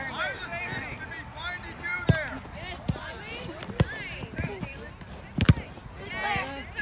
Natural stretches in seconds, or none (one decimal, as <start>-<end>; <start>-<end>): 0.0-6.8